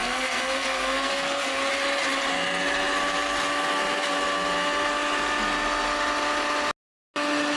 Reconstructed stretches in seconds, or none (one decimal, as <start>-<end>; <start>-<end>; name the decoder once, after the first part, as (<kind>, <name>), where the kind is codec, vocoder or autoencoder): 0.0-1.6 (codec, SNAC)